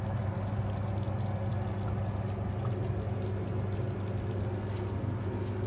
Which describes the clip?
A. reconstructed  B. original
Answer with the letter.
B